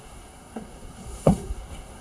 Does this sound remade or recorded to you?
remade